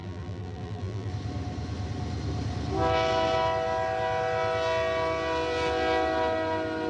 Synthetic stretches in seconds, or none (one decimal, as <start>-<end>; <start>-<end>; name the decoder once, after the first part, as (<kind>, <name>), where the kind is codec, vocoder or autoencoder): 0.0-1.1 (vocoder, BigVGAN v2)